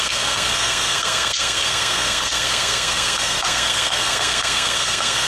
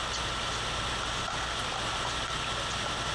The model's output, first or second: first